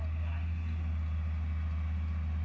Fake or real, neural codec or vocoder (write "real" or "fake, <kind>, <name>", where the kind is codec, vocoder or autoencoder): real